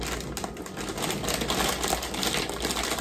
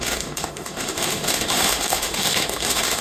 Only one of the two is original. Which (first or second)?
first